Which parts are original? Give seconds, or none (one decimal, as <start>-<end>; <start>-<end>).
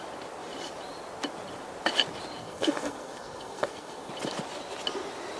0.0-2.4; 4.1-5.4